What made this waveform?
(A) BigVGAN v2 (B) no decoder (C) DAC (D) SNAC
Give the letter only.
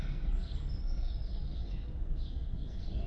D